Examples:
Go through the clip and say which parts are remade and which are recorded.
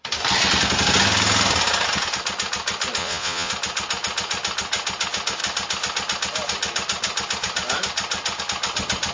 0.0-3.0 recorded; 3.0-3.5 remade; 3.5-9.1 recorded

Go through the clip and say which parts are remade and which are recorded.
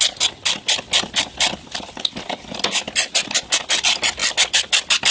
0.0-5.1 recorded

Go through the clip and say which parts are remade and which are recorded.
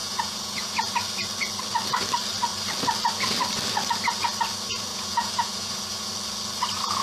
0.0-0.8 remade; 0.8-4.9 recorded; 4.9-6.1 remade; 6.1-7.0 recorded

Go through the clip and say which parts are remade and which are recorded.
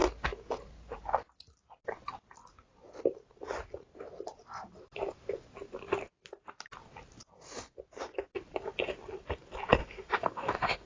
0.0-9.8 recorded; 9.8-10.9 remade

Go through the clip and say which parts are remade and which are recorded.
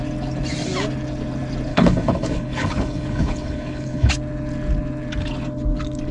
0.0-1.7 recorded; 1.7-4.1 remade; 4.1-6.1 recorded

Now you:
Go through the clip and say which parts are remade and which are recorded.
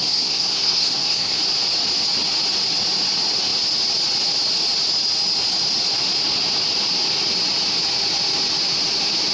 0.0-1.4 remade; 1.4-9.3 recorded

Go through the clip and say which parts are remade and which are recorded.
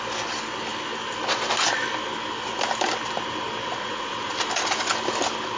0.0-3.7 recorded; 3.7-4.3 remade; 4.3-5.6 recorded